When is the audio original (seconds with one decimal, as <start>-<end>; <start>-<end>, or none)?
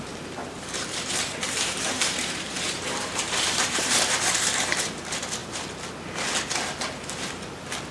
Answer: 0.0-0.4; 5.0-7.9